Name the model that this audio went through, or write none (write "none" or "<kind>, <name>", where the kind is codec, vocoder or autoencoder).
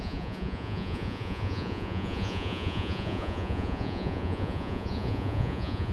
vocoder, Vocos